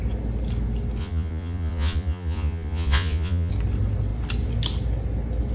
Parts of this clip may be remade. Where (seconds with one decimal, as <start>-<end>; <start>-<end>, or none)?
1.0-3.5